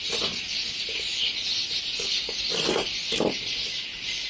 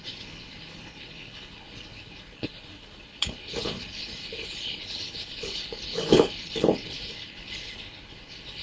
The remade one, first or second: second